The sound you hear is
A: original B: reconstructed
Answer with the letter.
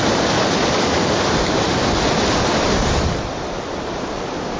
A